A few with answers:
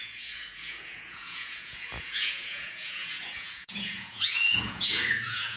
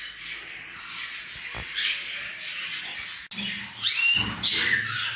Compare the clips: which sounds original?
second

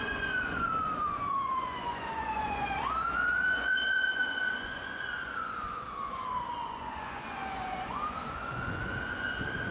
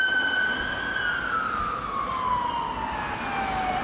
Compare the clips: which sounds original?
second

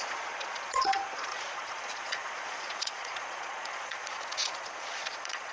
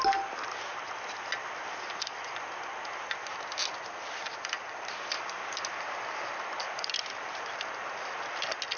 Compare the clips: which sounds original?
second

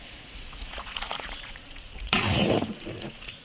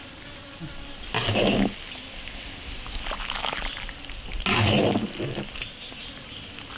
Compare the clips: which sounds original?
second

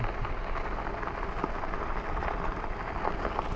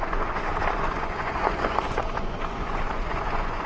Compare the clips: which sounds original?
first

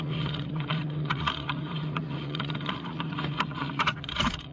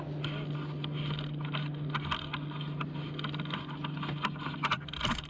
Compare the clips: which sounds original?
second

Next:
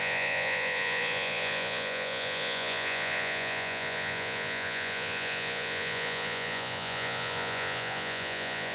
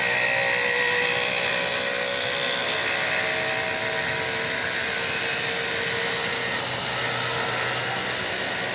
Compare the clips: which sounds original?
second